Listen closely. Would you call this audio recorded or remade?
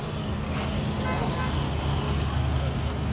recorded